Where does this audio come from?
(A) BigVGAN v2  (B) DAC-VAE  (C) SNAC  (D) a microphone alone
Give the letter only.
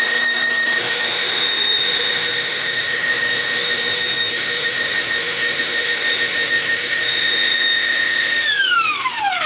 B